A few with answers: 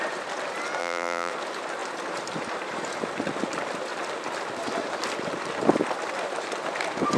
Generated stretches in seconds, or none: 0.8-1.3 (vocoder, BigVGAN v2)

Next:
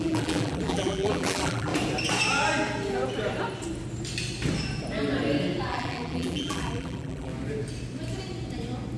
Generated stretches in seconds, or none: 0.0-1.7 (vocoder, BigVGAN v2); 5.7-7.3

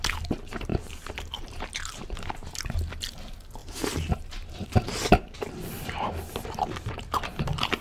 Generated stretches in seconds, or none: 0.7-1.7 (vocoder, BigVGAN v2); 3.6-5.5

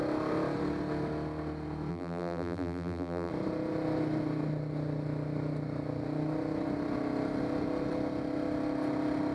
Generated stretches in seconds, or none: 1.9-3.3 (vocoder, BigVGAN v2)

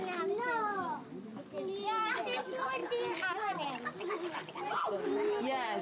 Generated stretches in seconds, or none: none

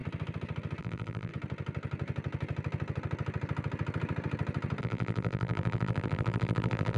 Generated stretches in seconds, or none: 0.8-1.3 (vocoder, BigVGAN v2); 4.8-7.0

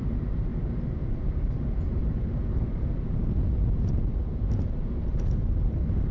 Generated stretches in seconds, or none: 0.0-6.1 (vocoder, BigVGAN v2)